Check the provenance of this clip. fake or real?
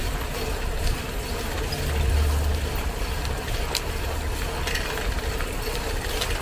real